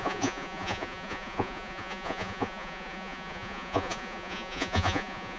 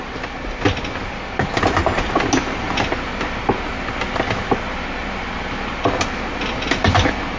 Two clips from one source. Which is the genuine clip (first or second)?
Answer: second